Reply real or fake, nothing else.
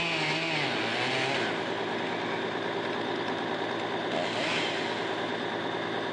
real